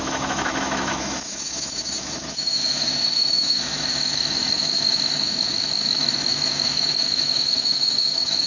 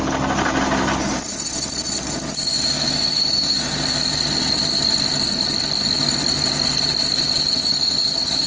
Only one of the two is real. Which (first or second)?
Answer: second